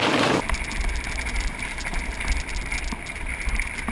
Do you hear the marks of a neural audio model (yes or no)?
no